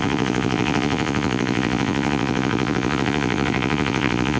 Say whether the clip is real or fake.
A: fake